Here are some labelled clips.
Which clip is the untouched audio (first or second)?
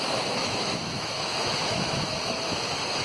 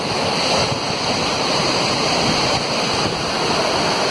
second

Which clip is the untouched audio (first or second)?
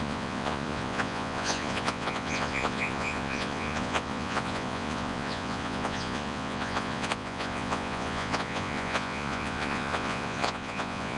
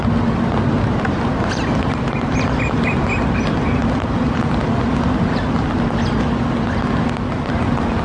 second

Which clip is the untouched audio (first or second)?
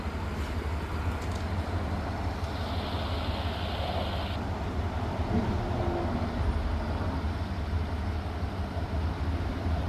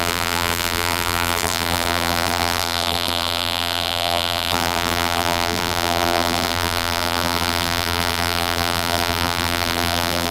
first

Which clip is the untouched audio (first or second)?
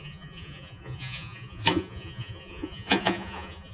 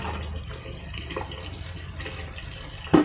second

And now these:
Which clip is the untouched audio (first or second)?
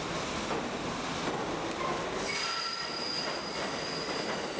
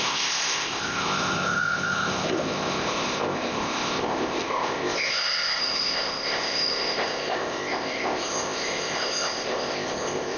first